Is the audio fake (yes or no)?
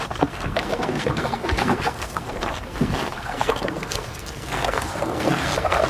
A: yes